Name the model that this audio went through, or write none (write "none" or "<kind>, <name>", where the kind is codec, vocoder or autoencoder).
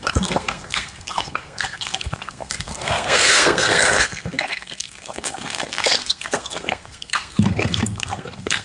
codec, SNAC